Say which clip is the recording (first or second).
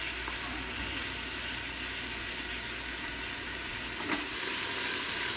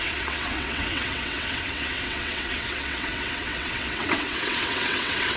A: first